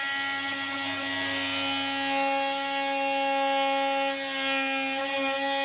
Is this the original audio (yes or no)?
yes